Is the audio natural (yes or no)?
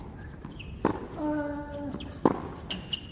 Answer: yes